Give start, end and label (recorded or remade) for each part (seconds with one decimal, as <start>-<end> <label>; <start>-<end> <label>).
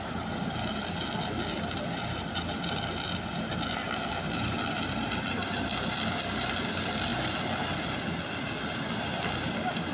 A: 0.0-9.9 recorded